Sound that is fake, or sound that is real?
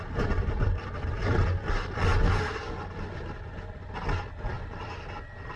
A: real